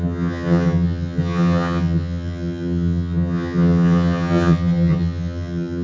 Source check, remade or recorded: remade